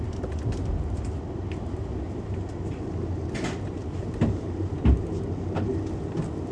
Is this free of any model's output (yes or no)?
yes